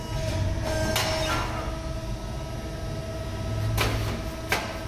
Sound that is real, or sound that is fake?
real